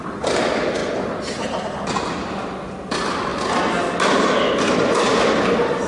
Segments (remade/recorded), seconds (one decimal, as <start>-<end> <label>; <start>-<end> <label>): 0.0-5.9 recorded